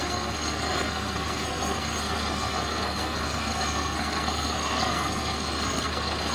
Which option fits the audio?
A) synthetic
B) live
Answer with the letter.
A